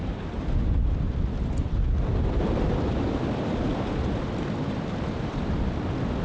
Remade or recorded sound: recorded